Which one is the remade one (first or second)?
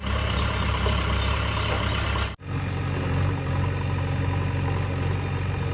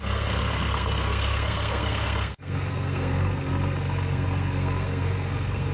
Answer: second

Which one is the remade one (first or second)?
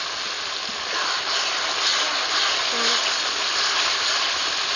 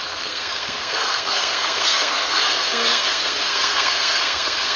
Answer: second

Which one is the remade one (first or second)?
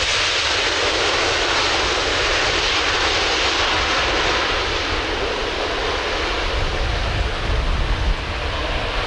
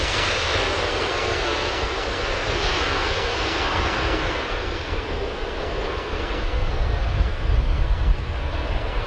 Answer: second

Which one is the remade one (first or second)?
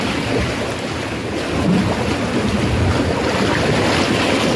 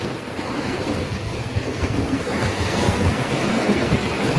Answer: second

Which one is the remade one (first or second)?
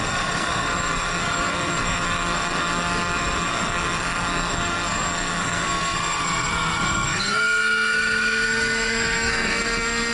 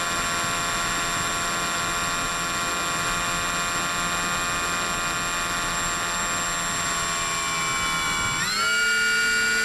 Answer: first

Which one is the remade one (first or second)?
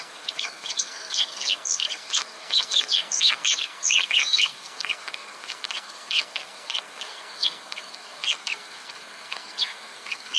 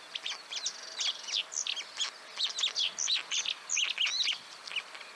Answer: first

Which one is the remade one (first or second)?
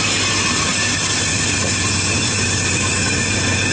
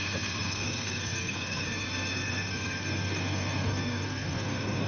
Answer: second